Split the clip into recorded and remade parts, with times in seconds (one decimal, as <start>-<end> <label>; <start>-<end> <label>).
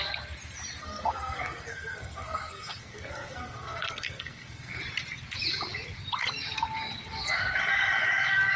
0.0-0.8 recorded; 0.8-4.8 remade; 4.8-8.6 recorded